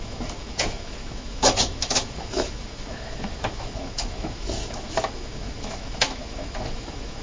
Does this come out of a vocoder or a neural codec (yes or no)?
yes